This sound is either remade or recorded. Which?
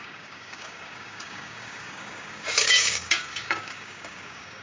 remade